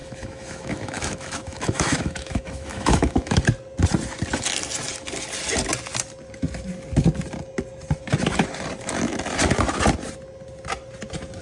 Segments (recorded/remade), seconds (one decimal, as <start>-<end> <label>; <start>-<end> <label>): 0.0-3.4 remade; 3.4-11.4 recorded